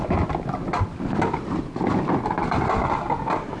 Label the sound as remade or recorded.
recorded